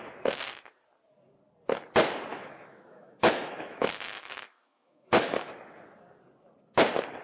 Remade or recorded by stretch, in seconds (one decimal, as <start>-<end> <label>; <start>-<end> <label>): 0.0-2.3 recorded; 2.3-5.5 remade; 5.5-7.2 recorded